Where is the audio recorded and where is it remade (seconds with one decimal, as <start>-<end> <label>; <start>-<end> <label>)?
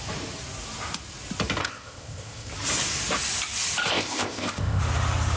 0.0-1.6 recorded; 1.6-2.5 remade; 2.5-3.9 recorded; 3.9-4.8 remade; 4.8-5.4 recorded